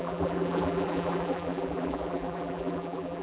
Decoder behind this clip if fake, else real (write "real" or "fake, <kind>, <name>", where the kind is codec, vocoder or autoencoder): fake, vocoder, BigVGAN v2